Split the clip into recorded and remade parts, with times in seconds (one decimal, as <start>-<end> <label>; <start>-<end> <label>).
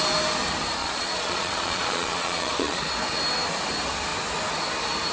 0.0-0.8 recorded; 0.8-2.8 remade; 2.8-5.1 recorded